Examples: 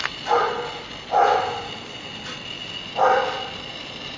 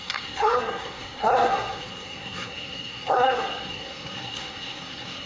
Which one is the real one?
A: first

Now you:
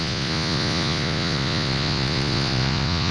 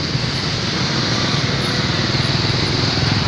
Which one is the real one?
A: second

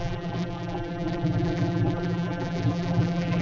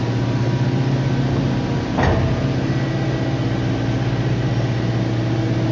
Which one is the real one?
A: second